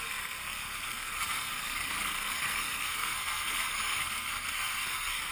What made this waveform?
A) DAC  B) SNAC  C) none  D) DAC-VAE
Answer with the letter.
B